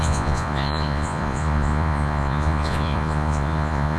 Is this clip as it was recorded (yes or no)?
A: no